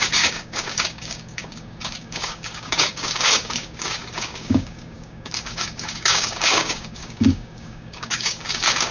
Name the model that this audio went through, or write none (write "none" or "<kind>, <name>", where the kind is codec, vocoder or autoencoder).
codec, DAC